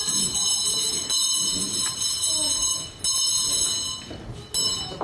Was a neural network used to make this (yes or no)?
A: no